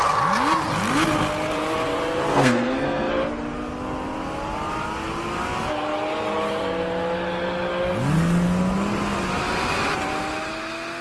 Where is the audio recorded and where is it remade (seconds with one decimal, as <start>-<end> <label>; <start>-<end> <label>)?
0.0-2.3 recorded; 2.3-3.1 remade; 3.1-11.0 recorded